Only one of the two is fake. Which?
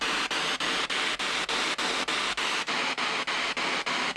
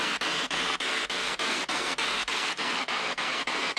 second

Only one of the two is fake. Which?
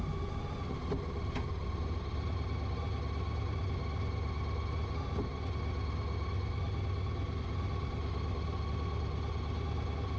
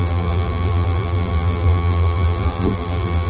second